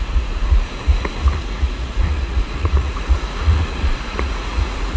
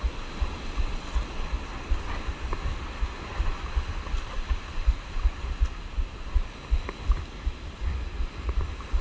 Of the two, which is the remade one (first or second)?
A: first